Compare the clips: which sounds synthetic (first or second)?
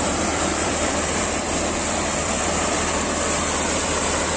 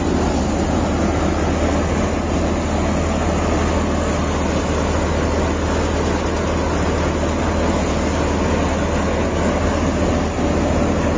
first